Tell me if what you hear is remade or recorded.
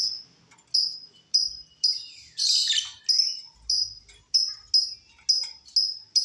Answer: recorded